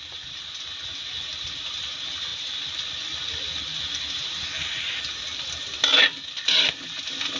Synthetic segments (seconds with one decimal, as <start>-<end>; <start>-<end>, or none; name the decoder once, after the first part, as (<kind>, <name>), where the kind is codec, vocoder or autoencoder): none